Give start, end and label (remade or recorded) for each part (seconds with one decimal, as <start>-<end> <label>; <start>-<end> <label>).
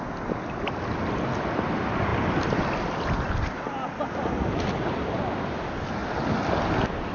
0.0-7.1 recorded